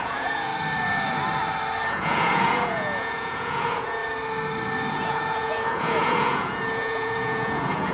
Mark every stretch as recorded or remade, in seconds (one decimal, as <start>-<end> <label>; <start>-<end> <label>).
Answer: 0.0-0.5 remade; 0.5-1.9 recorded; 1.9-4.0 remade; 4.0-4.9 recorded; 4.9-7.9 remade